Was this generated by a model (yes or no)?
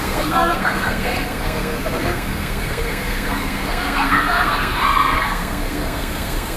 yes